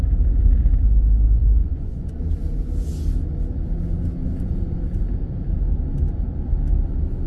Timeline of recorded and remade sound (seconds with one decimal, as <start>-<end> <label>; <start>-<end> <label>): 0.0-1.4 recorded; 1.4-2.2 remade; 2.2-4.2 recorded; 4.2-4.8 remade; 4.8-7.3 recorded